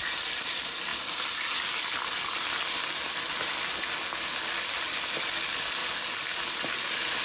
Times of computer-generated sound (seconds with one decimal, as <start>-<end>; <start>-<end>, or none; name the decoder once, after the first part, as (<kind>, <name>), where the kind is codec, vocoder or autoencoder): none